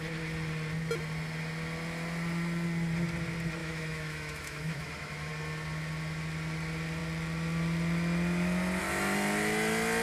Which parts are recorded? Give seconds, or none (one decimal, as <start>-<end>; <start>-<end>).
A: 0.0-3.6; 5.3-10.0